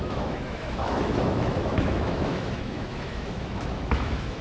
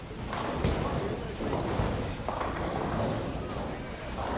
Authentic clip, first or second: second